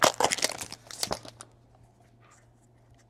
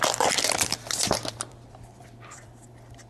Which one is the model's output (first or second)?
second